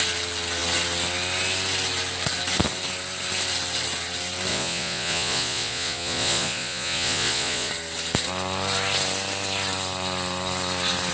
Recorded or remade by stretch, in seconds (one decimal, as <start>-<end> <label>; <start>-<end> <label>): 0.0-4.5 recorded; 4.5-7.7 remade; 7.7-11.1 recorded